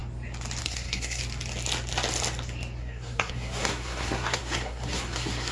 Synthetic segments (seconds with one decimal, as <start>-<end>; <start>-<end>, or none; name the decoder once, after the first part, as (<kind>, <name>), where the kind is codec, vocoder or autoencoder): 0.6-1.2 (codec, SNAC); 2.8-5.5